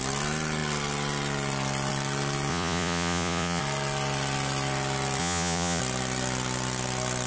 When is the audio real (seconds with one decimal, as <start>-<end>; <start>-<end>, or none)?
0.0-2.5; 3.6-5.2; 5.8-7.3